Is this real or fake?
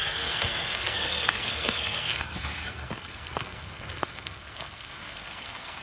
fake